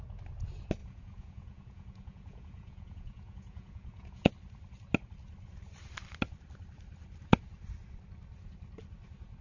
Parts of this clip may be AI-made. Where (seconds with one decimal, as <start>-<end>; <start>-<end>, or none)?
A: 0.8-4.3